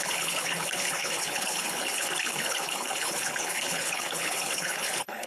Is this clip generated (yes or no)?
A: yes